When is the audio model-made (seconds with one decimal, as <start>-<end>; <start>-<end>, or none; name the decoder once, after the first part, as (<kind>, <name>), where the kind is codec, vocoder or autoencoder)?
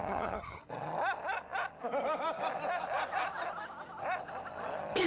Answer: 0.0-0.6 (vocoder, HiFi-GAN)